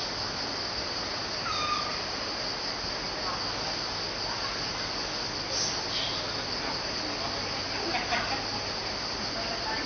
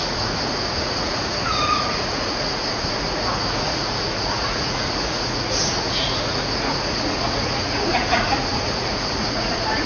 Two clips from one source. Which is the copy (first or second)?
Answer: second